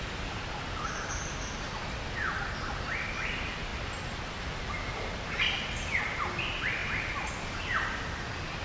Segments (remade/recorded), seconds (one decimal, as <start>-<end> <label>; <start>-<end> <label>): 0.0-8.6 recorded